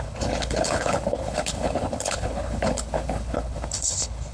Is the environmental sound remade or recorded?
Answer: remade